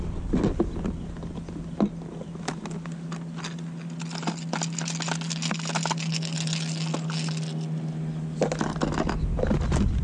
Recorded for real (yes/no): yes